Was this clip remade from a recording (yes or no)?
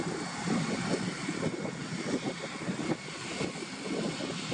no